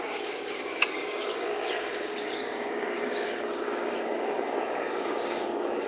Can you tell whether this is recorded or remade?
remade